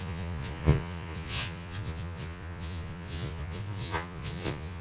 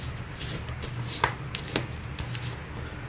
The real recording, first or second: second